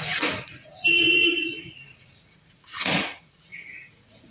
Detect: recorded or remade remade